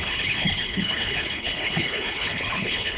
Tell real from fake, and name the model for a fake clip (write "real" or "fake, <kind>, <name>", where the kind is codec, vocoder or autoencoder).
fake, codec, HILCodec